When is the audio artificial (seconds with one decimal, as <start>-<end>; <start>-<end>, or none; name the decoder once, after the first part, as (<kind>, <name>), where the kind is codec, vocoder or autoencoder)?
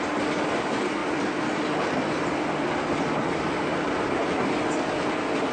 none